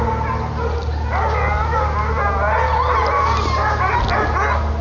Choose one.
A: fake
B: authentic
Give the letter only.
B